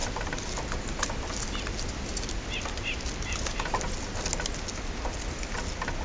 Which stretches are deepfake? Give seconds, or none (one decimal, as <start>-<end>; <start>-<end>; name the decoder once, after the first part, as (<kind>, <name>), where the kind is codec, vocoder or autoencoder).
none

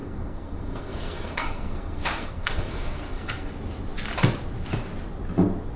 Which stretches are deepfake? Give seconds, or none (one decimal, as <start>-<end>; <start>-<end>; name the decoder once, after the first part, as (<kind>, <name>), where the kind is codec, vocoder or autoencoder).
0.0-3.5 (codec, SNAC)

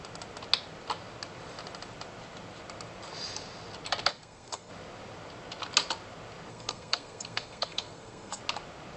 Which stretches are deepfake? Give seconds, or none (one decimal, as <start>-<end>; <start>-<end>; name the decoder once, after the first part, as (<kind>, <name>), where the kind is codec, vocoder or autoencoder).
4.1-4.7 (codec, SNAC); 6.5-8.4